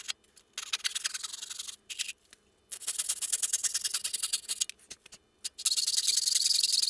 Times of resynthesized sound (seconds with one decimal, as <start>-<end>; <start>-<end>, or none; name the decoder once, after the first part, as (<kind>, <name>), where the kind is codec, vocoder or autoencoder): none